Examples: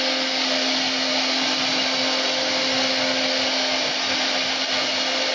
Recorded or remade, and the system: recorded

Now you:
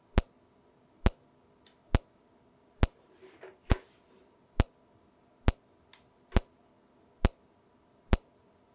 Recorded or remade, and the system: recorded